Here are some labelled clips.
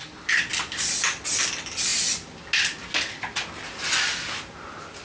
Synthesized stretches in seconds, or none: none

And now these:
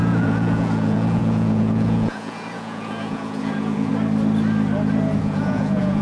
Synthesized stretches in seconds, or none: 0.0-3.9 (vocoder, Vocos); 5.2-6.0

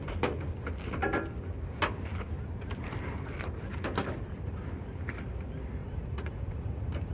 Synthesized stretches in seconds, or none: 5.8-7.1 (vocoder, Vocos)